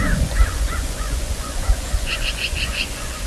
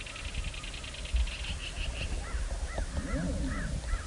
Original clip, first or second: second